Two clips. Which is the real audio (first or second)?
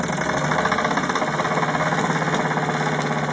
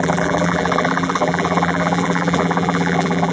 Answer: first